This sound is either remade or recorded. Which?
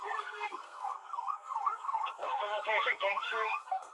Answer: remade